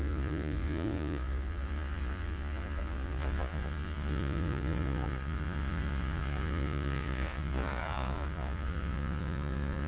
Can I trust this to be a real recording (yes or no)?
no